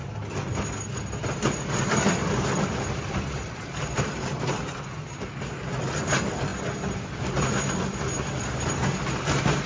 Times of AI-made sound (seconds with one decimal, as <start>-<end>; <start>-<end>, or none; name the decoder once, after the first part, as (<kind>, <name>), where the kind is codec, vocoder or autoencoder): 2.2-5.1 (vocoder, BigVGAN v2)